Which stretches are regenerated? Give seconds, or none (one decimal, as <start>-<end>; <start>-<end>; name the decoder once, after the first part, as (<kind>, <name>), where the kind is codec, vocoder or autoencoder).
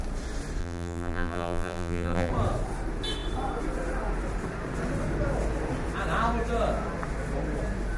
0.6-2.3 (vocoder, BigVGAN v2)